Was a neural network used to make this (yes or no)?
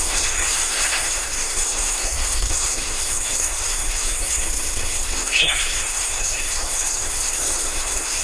yes